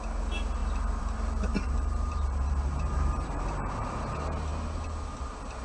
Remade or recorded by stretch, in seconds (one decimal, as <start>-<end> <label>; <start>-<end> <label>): 0.0-0.6 recorded; 0.6-4.0 remade; 4.0-5.6 recorded